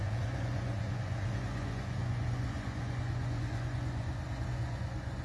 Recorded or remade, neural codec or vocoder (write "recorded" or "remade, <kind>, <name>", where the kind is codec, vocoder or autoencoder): remade, vocoder, Vocos